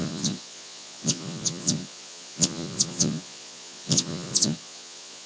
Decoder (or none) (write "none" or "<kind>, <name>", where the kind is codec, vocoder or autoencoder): vocoder, Vocos